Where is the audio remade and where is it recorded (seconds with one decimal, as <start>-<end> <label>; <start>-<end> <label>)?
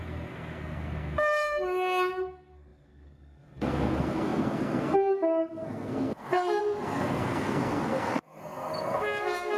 0.0-9.6 remade